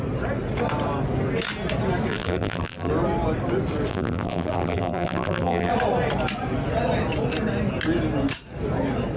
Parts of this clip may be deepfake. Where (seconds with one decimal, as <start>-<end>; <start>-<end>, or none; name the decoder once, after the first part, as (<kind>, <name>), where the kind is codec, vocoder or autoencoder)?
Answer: 2.1-2.9 (vocoder, BigVGAN v2); 3.9-5.7